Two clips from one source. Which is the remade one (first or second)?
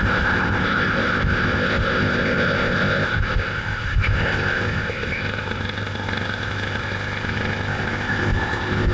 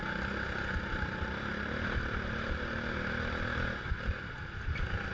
first